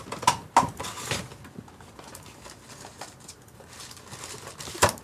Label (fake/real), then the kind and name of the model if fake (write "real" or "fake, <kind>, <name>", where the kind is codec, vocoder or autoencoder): real